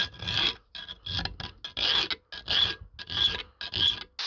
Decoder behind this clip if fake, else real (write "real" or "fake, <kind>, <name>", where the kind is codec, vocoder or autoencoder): real